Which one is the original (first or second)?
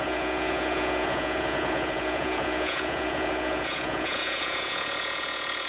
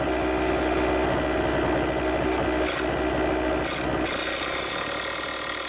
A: second